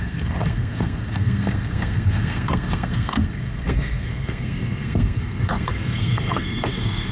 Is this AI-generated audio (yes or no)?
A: yes